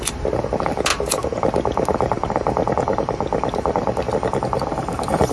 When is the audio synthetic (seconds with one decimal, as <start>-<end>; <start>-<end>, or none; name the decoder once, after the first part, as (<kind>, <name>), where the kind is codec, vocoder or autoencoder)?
none

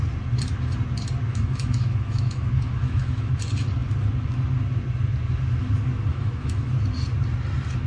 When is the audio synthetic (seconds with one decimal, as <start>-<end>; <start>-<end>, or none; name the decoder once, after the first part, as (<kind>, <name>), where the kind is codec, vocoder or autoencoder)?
1.3-3.3 (autoencoder, DAC-VAE); 6.1-6.7